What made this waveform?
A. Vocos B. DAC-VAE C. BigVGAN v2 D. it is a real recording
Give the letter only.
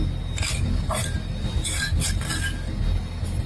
D